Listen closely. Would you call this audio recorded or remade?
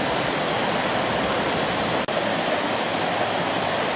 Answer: recorded